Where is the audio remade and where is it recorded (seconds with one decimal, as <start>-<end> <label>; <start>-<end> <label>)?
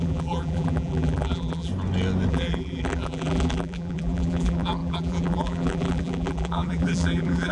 0.0-1.7 remade; 1.7-2.3 recorded; 2.3-7.5 remade